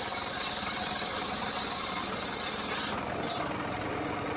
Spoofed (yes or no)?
no